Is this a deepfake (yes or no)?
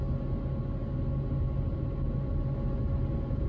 no